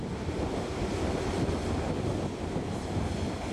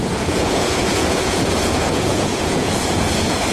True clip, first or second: first